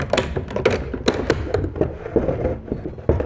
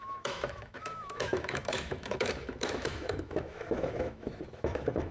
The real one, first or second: first